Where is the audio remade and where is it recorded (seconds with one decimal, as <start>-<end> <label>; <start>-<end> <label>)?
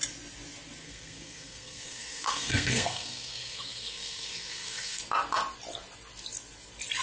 0.0-0.8 recorded; 0.8-5.0 remade; 5.0-7.0 recorded